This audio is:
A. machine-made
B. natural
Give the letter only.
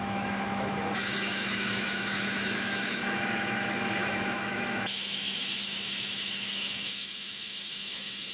A